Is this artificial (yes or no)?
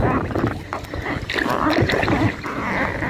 no